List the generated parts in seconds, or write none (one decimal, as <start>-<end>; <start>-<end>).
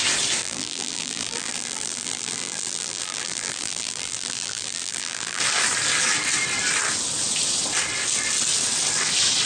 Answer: 0.4-5.4